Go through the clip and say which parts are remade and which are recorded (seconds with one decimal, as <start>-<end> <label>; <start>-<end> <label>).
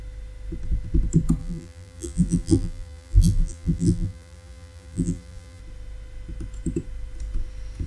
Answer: 0.0-1.4 recorded; 1.4-5.6 remade; 5.6-7.9 recorded